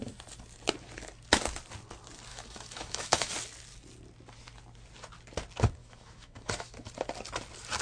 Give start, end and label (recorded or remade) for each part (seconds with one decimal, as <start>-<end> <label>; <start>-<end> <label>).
0.0-2.3 recorded; 2.3-3.3 remade; 3.3-5.8 recorded; 5.8-6.9 remade; 6.9-7.8 recorded